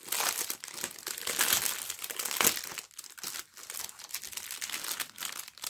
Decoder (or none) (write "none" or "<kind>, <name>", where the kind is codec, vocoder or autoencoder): none